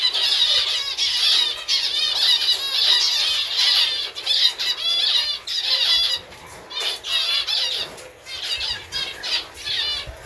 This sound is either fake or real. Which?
real